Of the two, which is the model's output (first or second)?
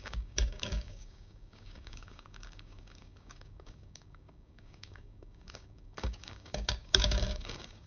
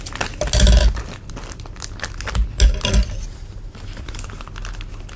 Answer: first